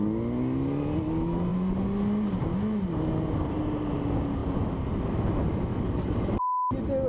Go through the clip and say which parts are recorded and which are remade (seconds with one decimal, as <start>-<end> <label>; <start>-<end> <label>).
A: 0.0-5.7 recorded; 5.7-6.4 remade; 6.4-7.1 recorded